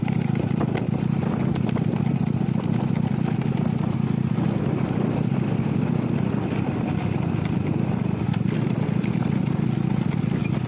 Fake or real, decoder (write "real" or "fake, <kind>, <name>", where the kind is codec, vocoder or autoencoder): real